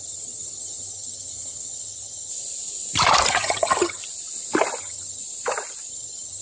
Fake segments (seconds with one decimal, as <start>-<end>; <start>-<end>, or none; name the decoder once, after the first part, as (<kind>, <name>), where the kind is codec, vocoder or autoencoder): 0.0-2.3 (vocoder, HiFi-GAN); 3.3-4.0; 4.8-5.2; 5.9-6.4